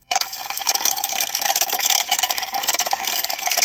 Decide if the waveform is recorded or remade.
remade